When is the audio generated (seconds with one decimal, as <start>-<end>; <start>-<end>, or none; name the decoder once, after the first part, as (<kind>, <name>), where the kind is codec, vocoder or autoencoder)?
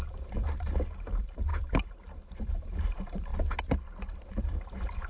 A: 0.0-3.3 (vocoder, BigVGAN v2); 4.4-5.1